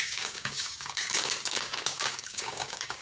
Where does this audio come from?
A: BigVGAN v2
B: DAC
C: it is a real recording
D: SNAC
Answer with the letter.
B